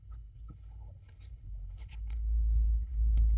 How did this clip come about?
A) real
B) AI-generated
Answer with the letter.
B